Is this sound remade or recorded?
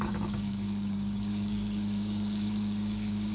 remade